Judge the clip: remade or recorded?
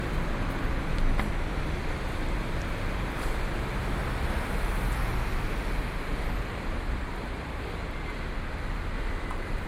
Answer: recorded